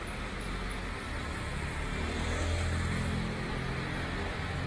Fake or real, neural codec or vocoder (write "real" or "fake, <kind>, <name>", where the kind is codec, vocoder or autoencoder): real